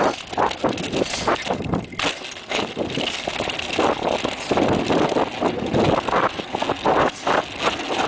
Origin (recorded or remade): recorded